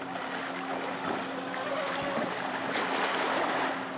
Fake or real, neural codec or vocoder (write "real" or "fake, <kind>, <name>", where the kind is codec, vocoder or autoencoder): real